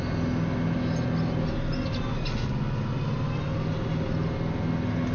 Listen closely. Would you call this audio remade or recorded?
recorded